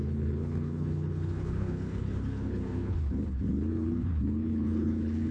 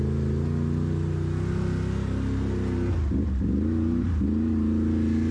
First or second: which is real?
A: second